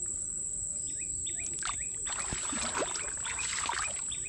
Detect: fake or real real